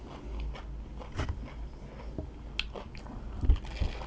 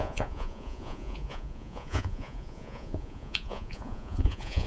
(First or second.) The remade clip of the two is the second